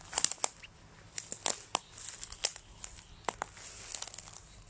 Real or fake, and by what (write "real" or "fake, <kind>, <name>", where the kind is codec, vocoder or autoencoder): real